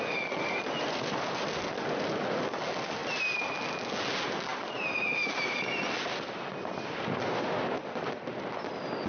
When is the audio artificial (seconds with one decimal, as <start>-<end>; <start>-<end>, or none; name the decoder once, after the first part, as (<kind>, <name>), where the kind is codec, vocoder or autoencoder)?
none